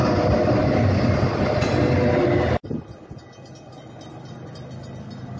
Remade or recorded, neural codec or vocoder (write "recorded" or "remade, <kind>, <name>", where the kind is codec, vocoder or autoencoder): recorded